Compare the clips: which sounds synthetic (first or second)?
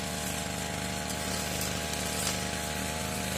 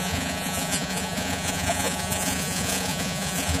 second